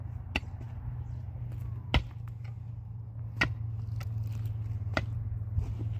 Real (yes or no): yes